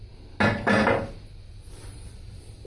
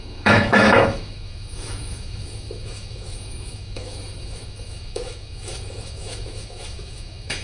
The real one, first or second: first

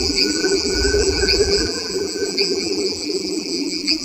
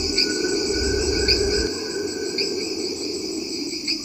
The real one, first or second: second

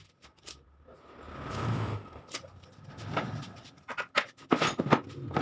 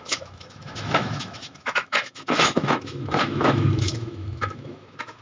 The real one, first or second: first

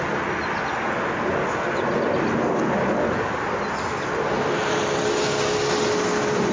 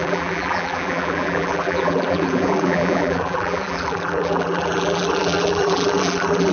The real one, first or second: first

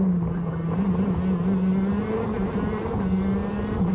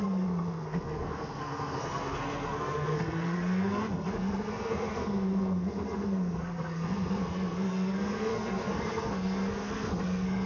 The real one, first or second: first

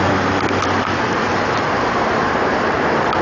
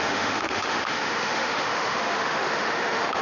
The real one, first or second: first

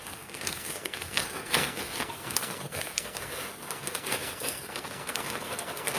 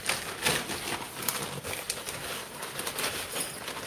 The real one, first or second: second